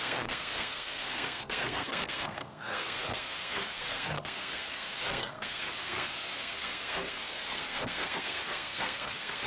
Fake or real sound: fake